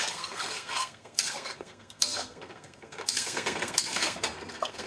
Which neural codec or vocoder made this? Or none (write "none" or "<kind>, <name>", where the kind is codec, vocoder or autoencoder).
codec, SNAC